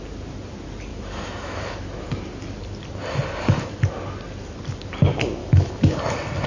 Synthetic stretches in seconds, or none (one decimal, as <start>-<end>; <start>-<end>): 0.9-2.1; 5.4-6.0